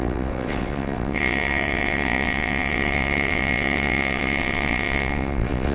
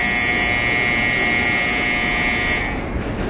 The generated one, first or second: first